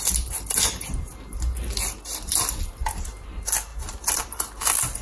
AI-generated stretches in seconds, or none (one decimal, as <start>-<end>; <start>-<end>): none